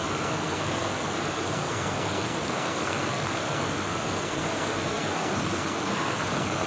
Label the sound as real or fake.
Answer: fake